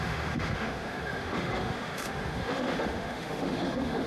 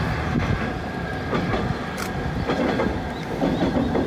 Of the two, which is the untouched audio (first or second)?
second